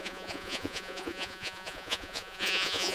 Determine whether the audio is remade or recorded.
remade